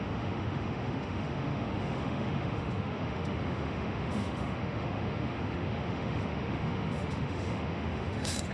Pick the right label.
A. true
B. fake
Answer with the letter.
B